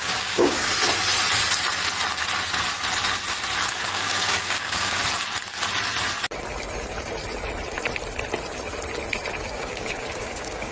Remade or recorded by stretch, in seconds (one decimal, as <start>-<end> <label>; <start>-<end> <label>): 0.0-0.6 remade; 0.6-3.7 recorded; 3.7-5.0 remade; 5.0-9.4 recorded; 9.4-10.7 remade